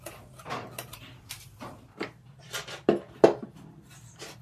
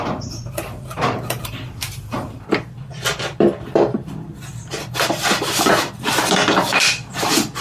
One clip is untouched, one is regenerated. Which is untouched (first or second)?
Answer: first